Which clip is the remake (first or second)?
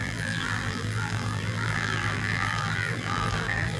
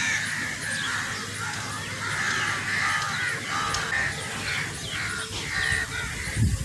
first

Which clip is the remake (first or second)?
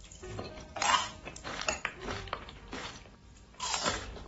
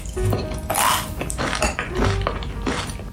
first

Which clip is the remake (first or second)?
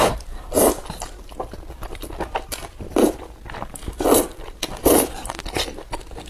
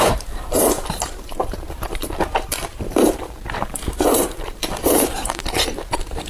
second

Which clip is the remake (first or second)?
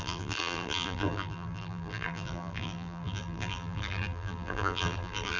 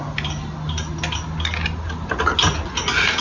first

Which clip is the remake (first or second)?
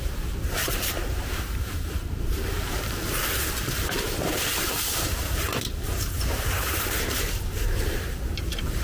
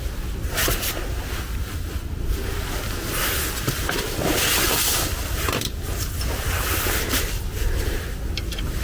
first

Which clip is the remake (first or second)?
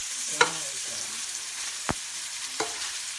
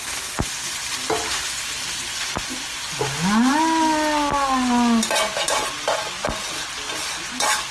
first